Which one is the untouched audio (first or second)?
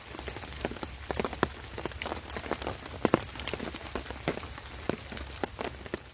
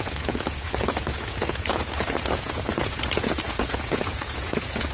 first